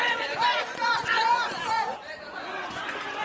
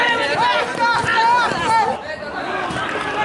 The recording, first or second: second